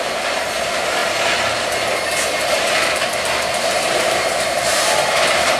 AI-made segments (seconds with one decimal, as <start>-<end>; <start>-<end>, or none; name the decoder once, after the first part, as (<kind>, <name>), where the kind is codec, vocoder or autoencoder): 0.0-1.0 (vocoder, BigVGAN v2); 2.5-3.1; 3.7-5.6